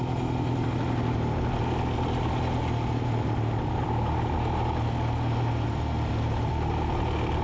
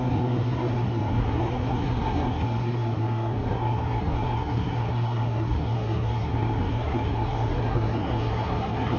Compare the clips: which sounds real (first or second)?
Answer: first